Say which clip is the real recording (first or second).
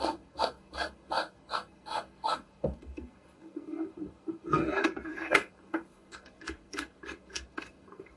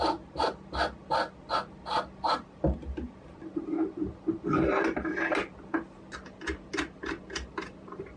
second